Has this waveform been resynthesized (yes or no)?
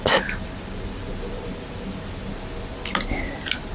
no